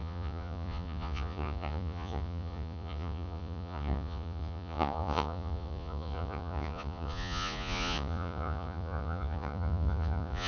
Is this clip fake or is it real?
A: fake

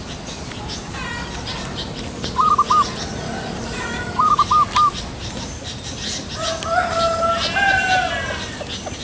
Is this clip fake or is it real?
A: real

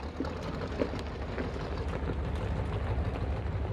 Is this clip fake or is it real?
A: real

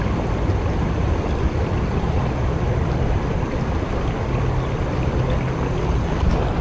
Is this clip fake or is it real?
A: real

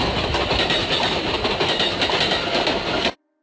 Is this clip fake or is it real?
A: real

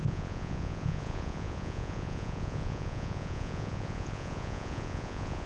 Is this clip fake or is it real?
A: fake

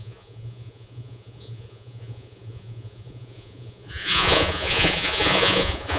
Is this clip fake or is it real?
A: fake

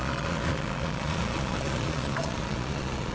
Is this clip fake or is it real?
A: fake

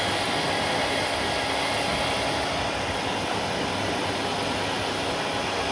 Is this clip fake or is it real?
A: real